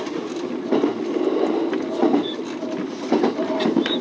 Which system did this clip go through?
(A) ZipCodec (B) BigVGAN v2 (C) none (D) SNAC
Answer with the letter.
C